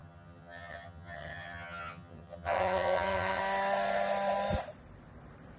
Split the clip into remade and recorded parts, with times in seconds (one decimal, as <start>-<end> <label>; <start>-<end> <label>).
0.0-3.4 remade; 3.4-5.6 recorded